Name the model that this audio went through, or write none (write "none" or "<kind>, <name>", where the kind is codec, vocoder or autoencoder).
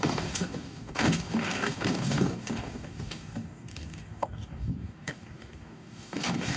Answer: codec, DAC